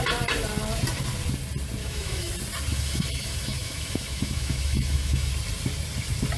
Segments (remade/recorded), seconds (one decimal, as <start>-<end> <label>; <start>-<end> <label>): 0.0-1.8 recorded; 1.8-2.3 remade; 2.3-2.7 recorded; 2.7-5.3 remade; 5.3-6.4 recorded